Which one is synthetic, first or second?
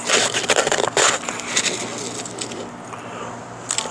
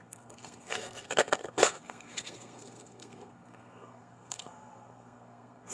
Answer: second